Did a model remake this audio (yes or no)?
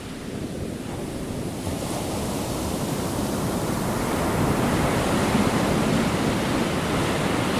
no